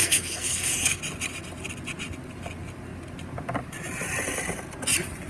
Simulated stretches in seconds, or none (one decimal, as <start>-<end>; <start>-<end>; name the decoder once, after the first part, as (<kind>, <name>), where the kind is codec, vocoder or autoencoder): 0.0-1.0 (codec, SNAC)